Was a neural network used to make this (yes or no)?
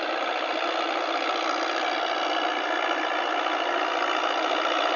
no